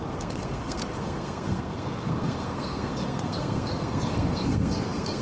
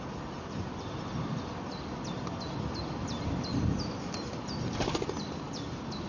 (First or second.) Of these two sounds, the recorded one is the second